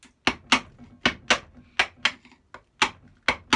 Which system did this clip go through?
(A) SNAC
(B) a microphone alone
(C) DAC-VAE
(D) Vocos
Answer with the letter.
B